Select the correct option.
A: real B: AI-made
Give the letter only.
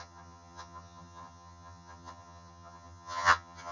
B